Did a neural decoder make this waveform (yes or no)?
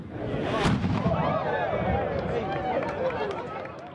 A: no